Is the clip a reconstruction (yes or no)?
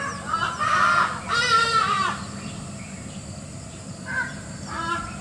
no